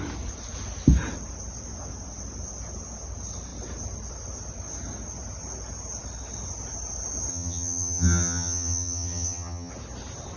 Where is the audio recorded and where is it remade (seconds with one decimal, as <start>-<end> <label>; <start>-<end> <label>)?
0.0-7.3 recorded; 7.3-9.7 remade; 9.7-10.4 recorded